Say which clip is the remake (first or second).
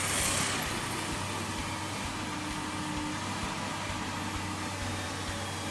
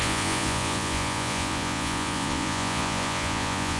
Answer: second